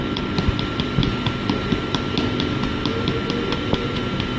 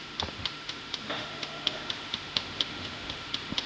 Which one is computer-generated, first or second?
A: second